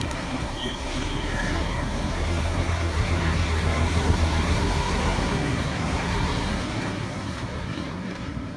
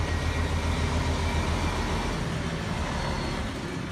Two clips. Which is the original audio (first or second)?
second